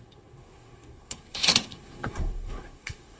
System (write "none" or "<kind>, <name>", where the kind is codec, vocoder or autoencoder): codec, SNAC